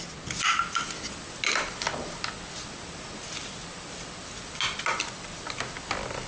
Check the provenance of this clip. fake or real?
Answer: real